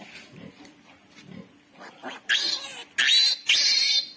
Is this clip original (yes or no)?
yes